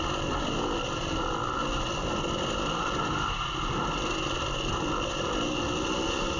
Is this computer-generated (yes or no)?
no